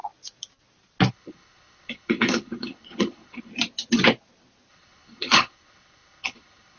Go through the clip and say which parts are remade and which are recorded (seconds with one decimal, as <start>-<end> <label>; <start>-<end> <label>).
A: 0.0-1.1 recorded; 1.1-3.5 remade; 3.5-4.7 recorded; 4.7-6.8 remade